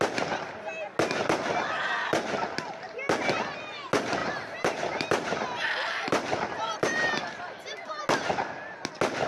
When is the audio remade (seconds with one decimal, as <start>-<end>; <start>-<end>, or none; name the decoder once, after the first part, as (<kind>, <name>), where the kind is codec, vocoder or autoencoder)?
4.2-8.0 (vocoder, BigVGAN v2)